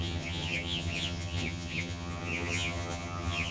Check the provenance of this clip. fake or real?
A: fake